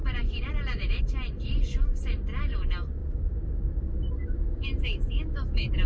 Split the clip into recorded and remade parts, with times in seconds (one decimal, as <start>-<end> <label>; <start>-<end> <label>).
0.0-1.0 remade; 1.0-3.0 recorded; 3.0-4.8 remade; 4.8-5.9 recorded